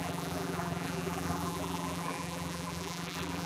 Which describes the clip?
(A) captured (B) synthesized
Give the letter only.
B